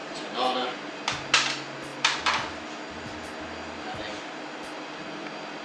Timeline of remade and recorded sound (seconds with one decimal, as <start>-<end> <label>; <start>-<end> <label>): 0.0-1.0 remade; 1.0-5.6 recorded